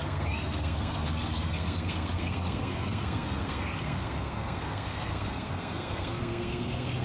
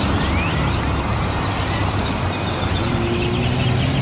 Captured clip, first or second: second